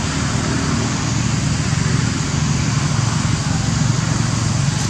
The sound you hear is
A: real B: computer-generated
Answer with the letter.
A